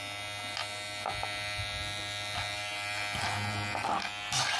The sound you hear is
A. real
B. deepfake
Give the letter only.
A